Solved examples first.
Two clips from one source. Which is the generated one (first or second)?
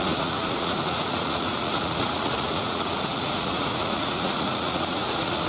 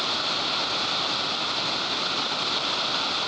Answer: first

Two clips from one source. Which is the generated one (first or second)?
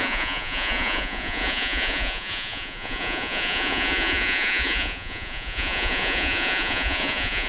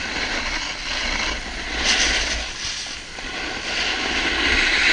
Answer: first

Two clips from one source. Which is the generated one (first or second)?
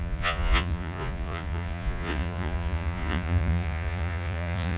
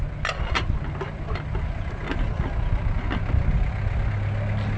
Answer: first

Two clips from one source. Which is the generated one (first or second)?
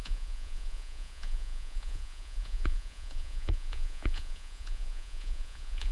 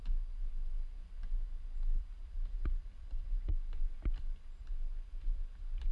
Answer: first